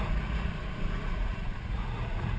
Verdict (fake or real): fake